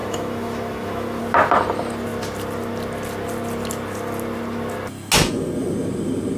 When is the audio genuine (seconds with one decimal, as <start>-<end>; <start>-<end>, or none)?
1.2-6.4